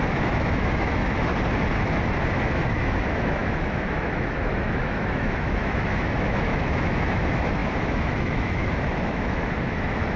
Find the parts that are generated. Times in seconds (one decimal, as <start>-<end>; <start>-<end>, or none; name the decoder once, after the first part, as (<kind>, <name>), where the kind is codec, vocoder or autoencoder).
0.0-1.3 (autoencoder, DAC-VAE); 2.4-10.2